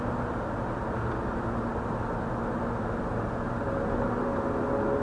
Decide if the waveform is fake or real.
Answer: real